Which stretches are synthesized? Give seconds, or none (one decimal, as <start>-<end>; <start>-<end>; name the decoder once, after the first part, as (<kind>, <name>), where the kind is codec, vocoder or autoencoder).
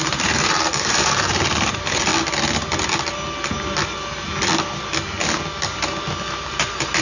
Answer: 0.0-2.1 (vocoder, BigVGAN v2); 6.3-7.0